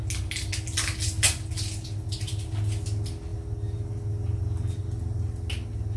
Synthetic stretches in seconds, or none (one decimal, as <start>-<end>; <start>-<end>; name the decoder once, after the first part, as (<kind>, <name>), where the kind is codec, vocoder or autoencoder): none